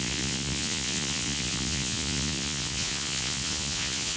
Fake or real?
fake